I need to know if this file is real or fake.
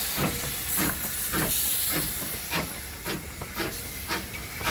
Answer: real